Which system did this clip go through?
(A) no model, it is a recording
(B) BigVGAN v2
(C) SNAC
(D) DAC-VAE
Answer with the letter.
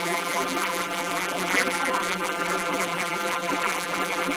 B